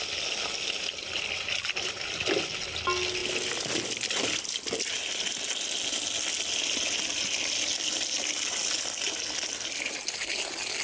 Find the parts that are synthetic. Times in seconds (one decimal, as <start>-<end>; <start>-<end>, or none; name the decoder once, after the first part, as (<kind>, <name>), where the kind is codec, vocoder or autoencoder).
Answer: none